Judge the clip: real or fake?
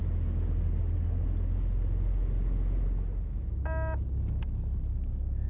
real